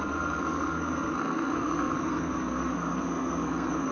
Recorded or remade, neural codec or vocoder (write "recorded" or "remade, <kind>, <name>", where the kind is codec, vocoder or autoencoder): remade, codec, SNAC